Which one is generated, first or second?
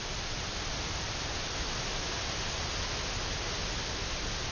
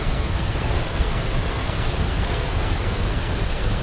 second